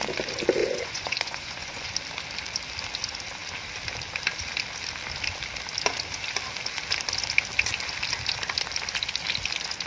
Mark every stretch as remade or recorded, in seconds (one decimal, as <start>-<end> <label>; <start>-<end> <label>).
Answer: 0.0-0.6 recorded; 0.6-1.9 remade; 1.9-9.9 recorded

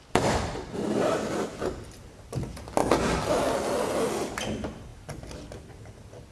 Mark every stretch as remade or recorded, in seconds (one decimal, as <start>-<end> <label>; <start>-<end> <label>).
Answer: 0.0-6.3 recorded